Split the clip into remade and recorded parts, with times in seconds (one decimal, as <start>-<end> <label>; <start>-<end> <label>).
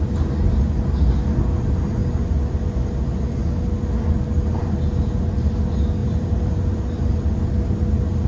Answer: 0.0-6.0 recorded; 6.0-6.8 remade; 6.8-8.3 recorded